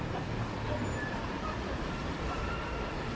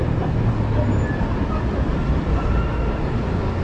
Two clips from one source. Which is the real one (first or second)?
second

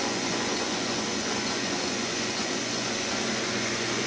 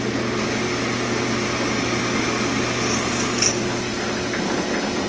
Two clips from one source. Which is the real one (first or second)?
second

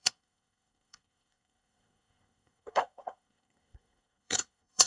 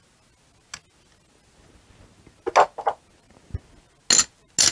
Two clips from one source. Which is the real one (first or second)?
second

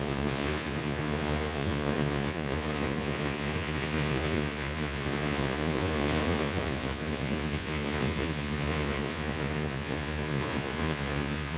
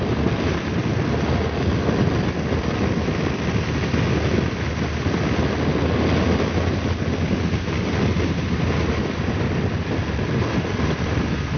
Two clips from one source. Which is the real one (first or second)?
second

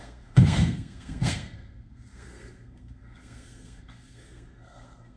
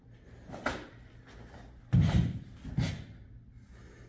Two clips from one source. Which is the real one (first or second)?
second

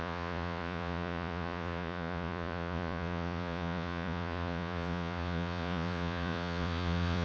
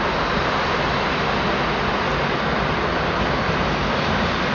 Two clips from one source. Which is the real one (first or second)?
second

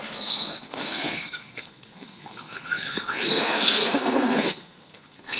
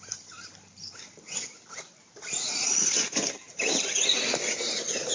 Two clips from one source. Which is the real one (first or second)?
second